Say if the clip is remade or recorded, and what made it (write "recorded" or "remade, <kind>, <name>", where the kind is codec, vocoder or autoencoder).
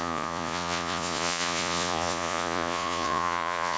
remade, vocoder, Vocos